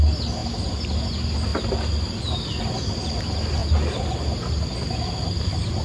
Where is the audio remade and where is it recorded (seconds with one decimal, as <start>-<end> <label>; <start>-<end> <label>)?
0.0-5.8 recorded